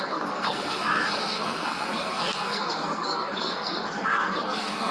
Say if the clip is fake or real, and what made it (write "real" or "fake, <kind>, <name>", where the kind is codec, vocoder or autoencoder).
fake, codec, SNAC